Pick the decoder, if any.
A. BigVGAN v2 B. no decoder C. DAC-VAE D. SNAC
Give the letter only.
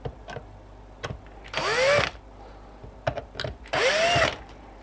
B